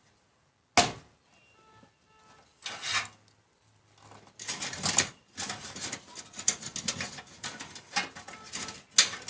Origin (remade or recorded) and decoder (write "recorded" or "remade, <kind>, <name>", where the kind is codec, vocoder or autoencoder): recorded